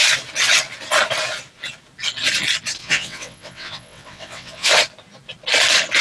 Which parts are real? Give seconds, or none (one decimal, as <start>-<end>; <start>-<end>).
0.0-2.8; 4.7-6.0